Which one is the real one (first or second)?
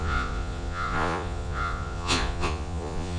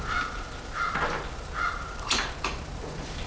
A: second